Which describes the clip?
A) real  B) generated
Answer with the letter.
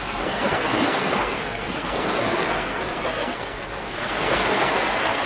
B